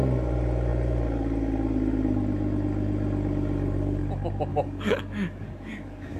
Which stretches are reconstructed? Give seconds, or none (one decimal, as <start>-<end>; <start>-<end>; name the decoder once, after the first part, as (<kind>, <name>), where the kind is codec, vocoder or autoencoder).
4.5-6.2 (codec, DAC)